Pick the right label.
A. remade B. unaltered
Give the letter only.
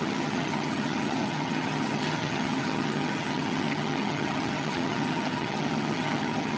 A